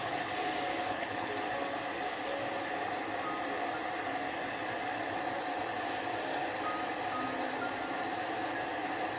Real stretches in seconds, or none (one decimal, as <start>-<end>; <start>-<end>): 0.0-0.7; 1.3-9.2